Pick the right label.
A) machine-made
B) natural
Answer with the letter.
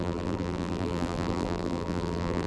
A